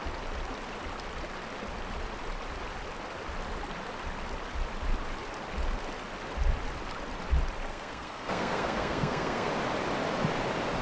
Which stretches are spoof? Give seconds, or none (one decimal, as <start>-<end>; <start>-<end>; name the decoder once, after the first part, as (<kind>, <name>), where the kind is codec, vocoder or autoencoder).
7.7-9.5 (codec, SNAC)